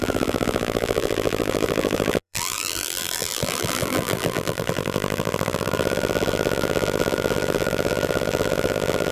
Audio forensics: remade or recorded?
remade